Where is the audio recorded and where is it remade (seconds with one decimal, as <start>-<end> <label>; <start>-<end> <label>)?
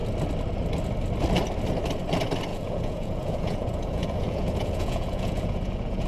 0.0-2.5 recorded; 2.5-6.1 remade